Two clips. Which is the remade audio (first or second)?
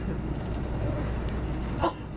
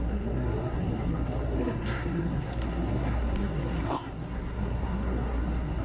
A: second